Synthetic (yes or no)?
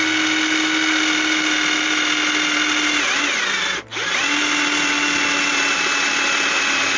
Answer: no